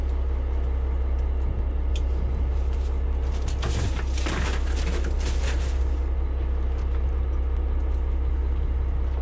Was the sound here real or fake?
real